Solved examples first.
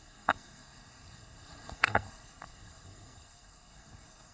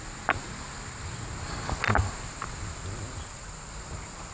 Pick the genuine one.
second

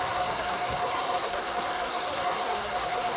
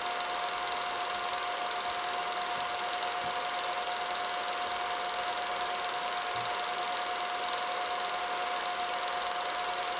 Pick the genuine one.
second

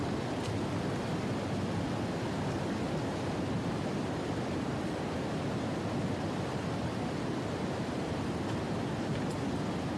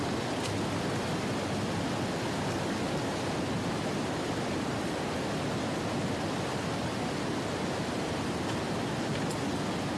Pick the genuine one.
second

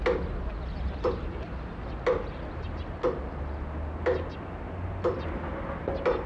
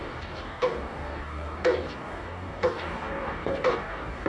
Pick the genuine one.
first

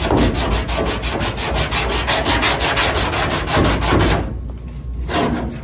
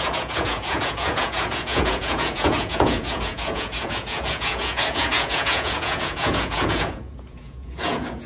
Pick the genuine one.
first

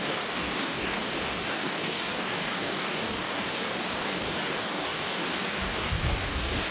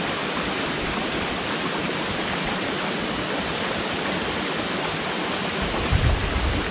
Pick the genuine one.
second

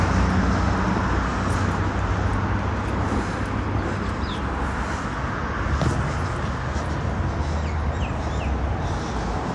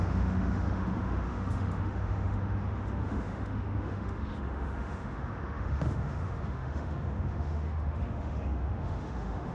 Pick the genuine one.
first